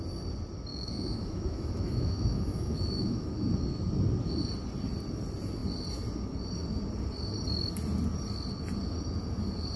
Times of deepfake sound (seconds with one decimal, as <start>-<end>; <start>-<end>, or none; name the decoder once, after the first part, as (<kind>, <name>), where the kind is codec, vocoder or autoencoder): 0.7-3.5 (autoencoder, DAC-VAE)